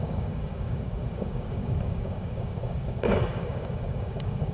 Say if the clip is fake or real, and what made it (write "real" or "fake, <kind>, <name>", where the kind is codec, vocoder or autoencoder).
fake, codec, DAC